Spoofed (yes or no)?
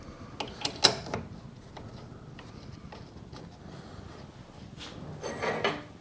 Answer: no